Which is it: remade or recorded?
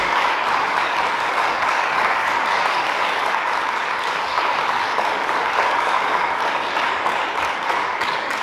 remade